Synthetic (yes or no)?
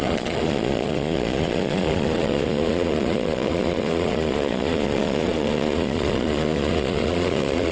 yes